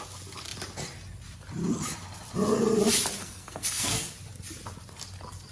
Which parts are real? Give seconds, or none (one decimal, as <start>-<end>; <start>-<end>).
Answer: 0.0-3.2; 4.1-5.5